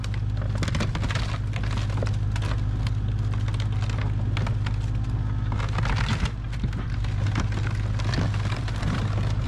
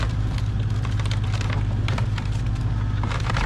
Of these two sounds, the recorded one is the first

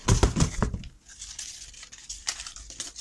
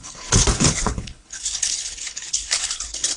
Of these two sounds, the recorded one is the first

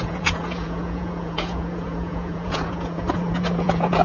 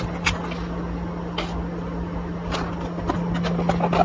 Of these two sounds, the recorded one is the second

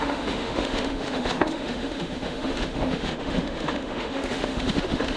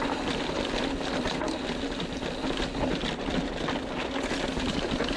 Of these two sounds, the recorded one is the second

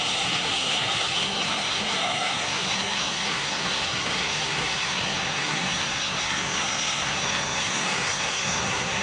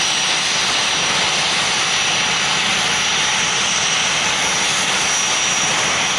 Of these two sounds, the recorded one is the second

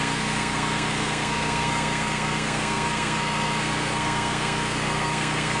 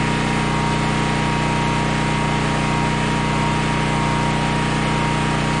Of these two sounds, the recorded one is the second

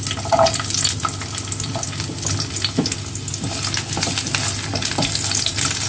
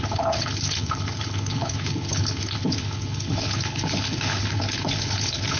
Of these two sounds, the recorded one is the first